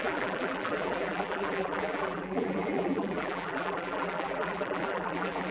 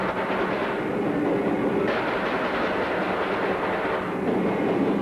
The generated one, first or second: first